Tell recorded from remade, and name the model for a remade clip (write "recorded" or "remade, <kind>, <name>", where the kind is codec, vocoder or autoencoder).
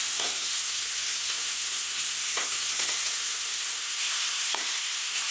remade, codec, SNAC